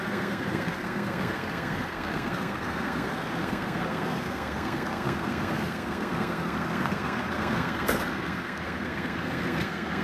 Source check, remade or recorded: remade